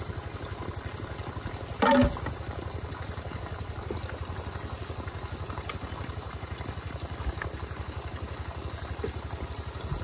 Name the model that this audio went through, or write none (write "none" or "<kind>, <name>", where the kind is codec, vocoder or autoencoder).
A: none